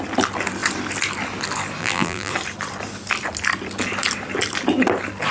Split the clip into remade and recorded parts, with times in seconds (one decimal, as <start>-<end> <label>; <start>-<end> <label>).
0.0-1.8 recorded; 1.8-2.3 remade; 2.3-5.3 recorded